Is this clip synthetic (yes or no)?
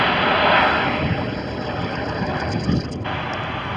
no